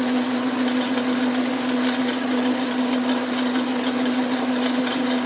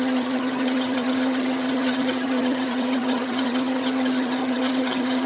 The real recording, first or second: first